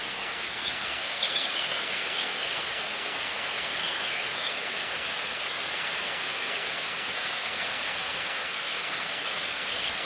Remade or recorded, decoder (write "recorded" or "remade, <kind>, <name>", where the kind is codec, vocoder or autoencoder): remade, codec, SNAC